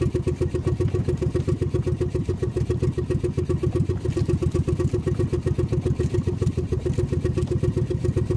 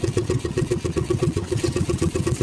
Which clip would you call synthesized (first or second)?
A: second